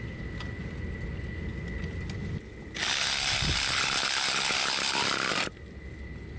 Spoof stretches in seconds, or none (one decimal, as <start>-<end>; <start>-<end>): none

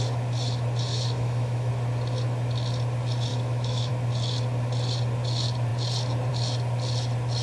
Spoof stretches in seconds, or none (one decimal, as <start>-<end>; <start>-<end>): 0.9-1.7; 3.3-3.9

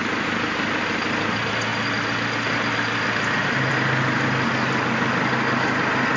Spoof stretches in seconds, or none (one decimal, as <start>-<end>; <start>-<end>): none

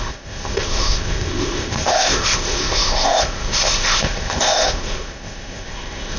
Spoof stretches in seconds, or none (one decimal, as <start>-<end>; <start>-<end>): 0.0-6.2

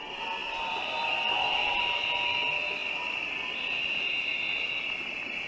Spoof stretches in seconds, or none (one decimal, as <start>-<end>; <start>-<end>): 0.4-1.8

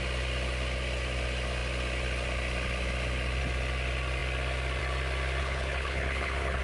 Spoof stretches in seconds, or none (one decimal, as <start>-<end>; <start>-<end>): 5.4-6.6

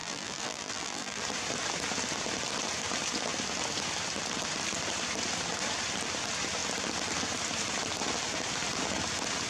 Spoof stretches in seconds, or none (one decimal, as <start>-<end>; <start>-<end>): 0.0-1.2

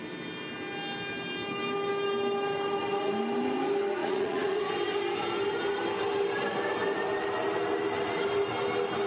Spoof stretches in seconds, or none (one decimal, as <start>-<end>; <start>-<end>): 4.0-4.6